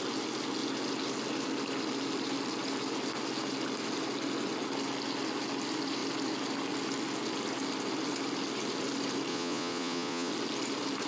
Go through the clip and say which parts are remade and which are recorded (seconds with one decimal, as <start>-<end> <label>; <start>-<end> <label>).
0.0-9.3 recorded; 9.3-10.3 remade; 10.3-11.1 recorded